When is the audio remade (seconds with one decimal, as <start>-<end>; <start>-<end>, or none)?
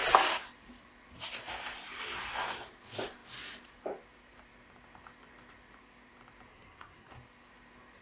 6.5-7.1